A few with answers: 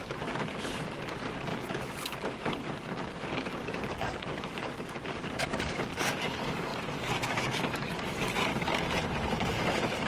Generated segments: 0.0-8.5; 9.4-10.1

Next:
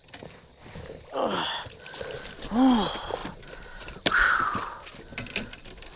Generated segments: none